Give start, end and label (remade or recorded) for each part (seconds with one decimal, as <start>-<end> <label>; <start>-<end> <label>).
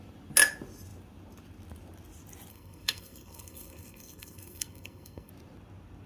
0.0-2.5 recorded; 2.5-5.3 remade; 5.3-6.1 recorded